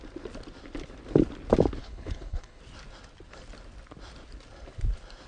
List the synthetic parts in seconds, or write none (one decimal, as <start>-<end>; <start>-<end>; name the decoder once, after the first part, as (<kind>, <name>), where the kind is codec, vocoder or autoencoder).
1.8-2.6 (codec, HILCodec)